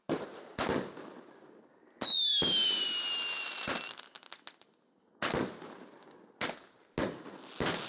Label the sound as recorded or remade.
recorded